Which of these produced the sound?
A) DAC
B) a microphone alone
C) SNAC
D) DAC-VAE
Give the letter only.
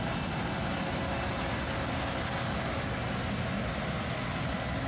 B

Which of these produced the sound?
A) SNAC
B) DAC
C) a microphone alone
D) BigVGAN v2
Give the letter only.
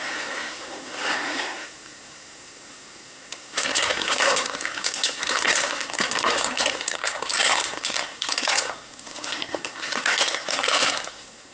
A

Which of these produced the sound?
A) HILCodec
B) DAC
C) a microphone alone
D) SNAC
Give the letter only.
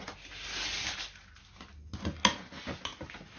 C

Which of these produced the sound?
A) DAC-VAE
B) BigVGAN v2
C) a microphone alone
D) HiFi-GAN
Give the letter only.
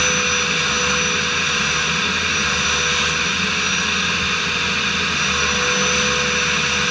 C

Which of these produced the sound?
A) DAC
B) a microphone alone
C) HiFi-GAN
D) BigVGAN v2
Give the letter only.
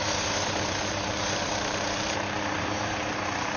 D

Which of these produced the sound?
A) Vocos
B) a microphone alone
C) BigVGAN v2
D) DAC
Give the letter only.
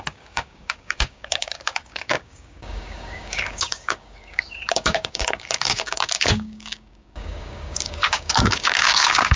D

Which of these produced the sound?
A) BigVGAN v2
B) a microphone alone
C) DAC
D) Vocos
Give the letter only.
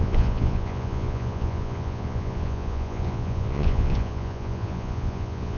D